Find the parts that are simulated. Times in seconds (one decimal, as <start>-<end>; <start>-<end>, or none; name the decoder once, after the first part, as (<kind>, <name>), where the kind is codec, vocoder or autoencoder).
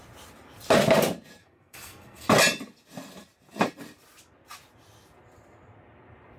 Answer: 1.4-2.3 (codec, SNAC)